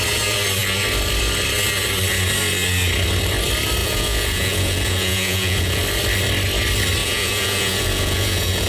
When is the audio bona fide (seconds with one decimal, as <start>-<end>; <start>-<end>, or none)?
0.0-3.8; 5.8-7.0